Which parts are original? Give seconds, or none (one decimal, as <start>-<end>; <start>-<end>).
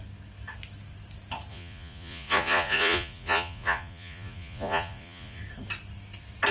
0.0-1.5; 5.4-6.5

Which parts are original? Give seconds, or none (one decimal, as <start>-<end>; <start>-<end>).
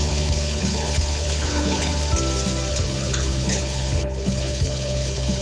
1.9-2.7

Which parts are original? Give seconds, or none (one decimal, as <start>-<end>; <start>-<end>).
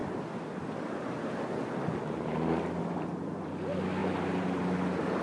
0.0-5.2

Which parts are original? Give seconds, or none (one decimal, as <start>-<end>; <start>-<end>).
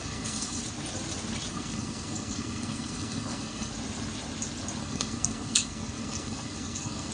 0.6-1.5; 3.7-4.8